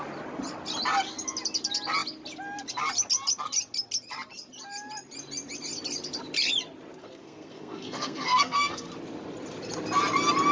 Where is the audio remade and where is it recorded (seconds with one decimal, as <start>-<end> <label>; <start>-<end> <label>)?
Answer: 0.0-7.0 recorded; 7.0-8.9 remade; 8.9-10.5 recorded